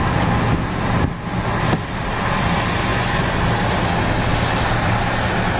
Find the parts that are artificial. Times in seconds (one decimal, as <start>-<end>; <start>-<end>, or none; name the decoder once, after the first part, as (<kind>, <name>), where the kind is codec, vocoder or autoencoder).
2.9-3.4 (vocoder, Vocos)